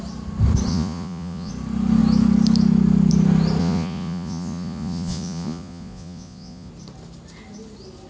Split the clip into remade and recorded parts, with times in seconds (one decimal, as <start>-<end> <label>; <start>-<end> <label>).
0.0-0.7 recorded; 0.7-1.5 remade; 1.5-3.6 recorded; 3.6-6.7 remade; 6.7-8.1 recorded